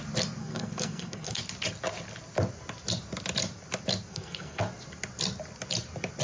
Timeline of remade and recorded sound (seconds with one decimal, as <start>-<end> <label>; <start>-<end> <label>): 0.0-0.4 recorded; 0.4-1.4 remade; 1.4-4.1 recorded; 4.1-4.6 remade; 4.6-6.2 recorded